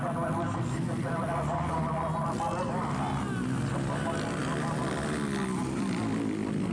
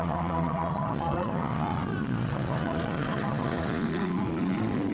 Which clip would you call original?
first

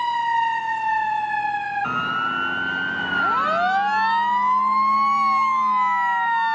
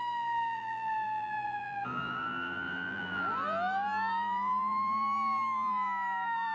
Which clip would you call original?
first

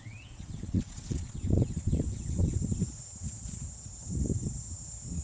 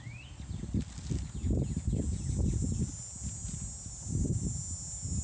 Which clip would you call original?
second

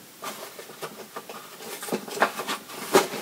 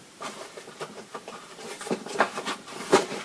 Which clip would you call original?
first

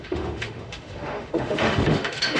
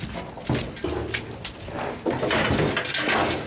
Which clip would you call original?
second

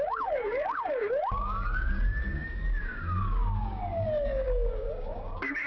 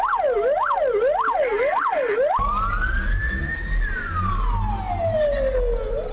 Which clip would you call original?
second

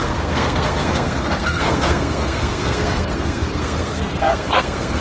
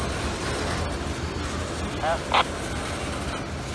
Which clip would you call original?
second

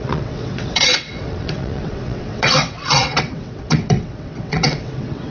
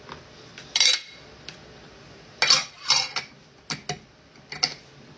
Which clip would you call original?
second